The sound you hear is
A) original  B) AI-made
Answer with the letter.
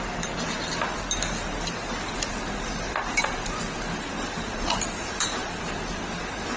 A